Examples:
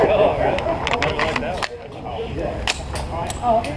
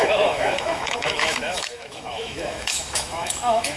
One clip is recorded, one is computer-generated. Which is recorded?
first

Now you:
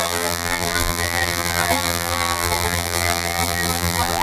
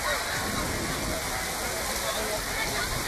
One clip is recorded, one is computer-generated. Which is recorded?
second